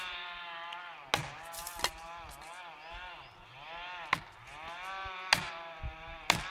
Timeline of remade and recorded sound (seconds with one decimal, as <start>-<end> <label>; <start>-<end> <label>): 0.0-6.5 recorded